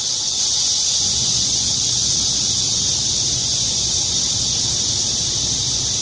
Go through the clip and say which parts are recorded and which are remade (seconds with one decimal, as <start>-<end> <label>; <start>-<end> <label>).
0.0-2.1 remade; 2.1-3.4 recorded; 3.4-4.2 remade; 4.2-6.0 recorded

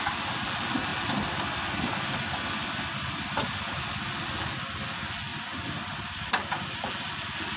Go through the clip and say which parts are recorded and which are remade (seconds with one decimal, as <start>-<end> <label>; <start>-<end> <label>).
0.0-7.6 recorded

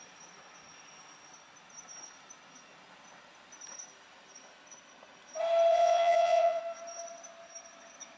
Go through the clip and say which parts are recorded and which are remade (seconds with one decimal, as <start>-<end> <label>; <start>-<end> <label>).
0.0-5.7 recorded; 5.7-6.6 remade; 6.6-8.2 recorded

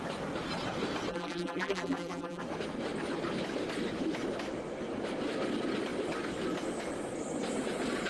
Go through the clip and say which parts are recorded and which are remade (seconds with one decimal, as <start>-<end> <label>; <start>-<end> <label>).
0.0-1.1 recorded; 1.1-2.4 remade; 2.4-8.1 recorded